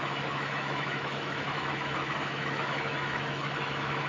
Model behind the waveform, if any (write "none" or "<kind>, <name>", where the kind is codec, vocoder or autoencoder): autoencoder, DAC-VAE